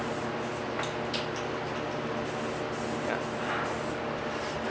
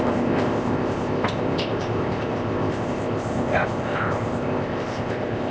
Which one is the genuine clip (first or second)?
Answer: first